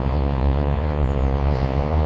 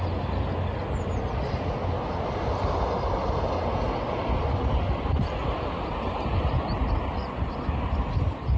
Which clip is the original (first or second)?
second